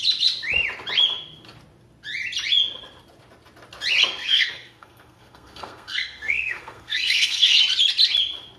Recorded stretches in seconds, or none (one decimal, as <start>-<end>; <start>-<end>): 0.0-4.0; 7.6-8.6